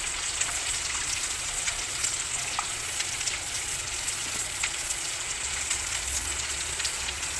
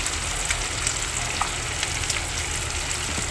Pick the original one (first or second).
second